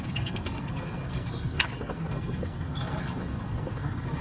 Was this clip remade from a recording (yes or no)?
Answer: yes